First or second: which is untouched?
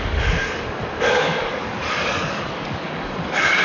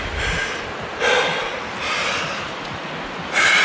second